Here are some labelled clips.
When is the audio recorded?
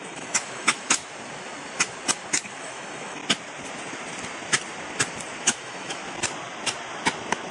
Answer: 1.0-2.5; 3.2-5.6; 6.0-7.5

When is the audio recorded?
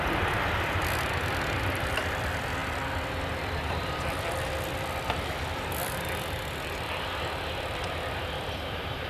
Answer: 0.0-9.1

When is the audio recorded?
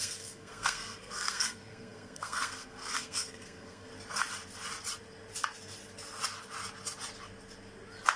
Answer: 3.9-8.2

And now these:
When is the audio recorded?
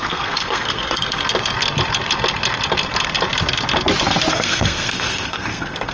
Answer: 1.2-4.3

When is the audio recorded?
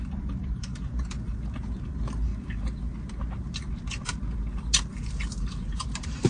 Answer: 2.3-4.8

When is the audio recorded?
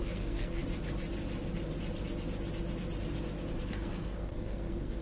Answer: 0.6-3.6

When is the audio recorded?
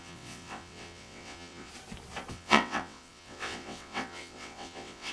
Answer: 1.7-2.3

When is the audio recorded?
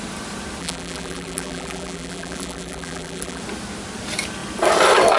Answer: 0.0-0.6; 3.4-5.2